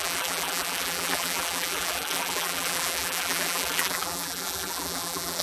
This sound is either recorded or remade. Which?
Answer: remade